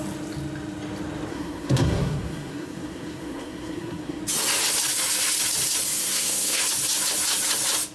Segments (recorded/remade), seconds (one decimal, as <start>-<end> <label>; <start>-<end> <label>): 0.0-1.3 recorded; 1.3-4.2 remade; 4.2-6.0 recorded; 6.0-6.6 remade; 6.6-7.9 recorded